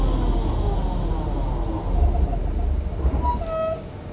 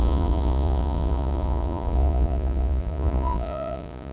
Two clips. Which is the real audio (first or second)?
first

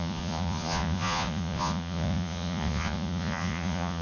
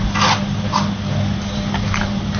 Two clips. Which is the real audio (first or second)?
second